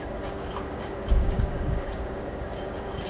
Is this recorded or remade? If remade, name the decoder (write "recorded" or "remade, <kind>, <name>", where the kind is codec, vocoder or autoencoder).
remade, codec, DAC